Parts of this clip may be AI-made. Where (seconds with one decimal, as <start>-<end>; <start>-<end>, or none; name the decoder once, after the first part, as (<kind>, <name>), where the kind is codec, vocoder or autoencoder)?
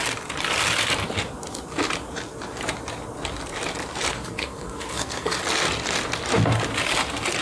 4.1-5.4 (codec, SNAC)